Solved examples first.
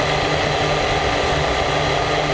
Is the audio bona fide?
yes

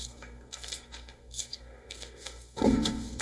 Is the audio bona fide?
no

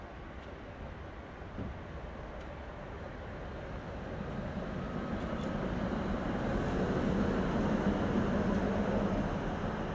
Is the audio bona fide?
yes